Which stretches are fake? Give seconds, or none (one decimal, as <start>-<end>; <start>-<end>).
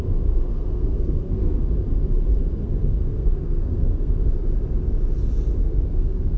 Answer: 0.5-1.6; 2.6-4.1; 5.6-6.4